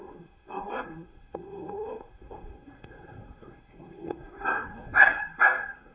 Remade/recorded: remade